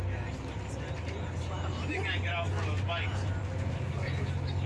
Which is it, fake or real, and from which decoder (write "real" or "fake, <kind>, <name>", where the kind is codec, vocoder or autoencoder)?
real